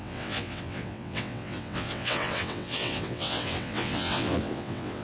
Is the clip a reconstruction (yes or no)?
yes